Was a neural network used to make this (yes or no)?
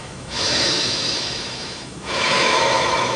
yes